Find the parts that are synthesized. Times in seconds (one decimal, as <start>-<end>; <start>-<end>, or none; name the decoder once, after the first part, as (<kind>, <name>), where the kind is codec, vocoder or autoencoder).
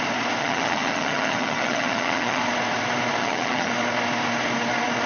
0.4-2.4 (vocoder, HiFi-GAN); 3.2-3.7